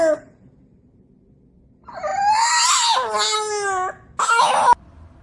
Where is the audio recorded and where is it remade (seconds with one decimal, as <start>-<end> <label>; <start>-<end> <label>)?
0.0-5.2 recorded